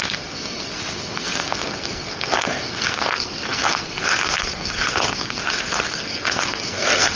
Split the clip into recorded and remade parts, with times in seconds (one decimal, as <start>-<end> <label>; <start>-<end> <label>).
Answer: 0.0-7.2 remade